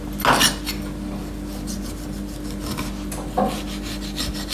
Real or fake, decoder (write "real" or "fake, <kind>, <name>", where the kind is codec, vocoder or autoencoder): real